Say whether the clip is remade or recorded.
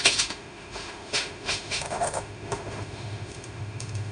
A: remade